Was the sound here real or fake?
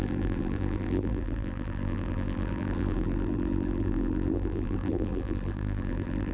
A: fake